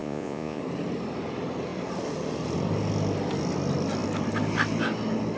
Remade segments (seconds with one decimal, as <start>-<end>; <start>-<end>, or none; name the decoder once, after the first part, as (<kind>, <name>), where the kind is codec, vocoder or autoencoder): 0.0-0.6 (vocoder, Vocos)